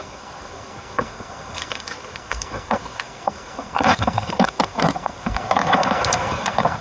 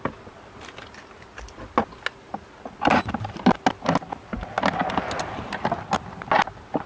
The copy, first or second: first